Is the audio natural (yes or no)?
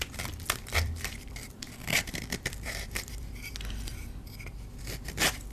no